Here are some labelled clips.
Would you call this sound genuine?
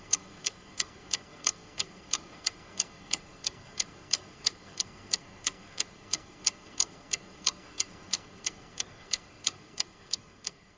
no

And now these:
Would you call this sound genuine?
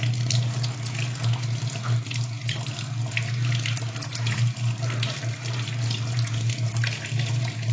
yes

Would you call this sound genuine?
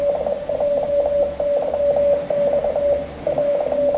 yes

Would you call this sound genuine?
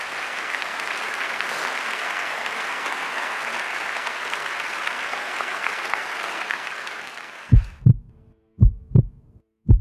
no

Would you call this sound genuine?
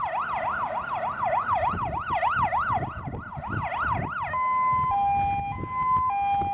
yes